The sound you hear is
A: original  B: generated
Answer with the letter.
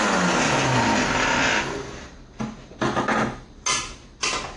A